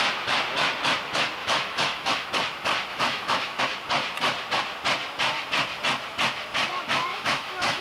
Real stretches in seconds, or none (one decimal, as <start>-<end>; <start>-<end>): 0.0-1.4; 2.3-2.9; 3.6-7.1